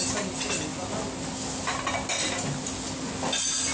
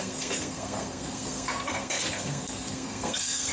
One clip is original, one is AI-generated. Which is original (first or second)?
first